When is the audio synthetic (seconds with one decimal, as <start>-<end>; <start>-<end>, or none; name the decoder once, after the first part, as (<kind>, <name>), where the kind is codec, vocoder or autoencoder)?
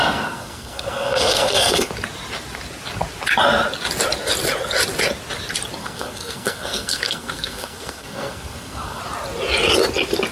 0.0-1.9 (codec, SNAC); 5.8-9.0